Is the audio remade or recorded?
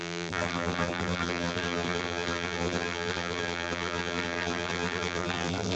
remade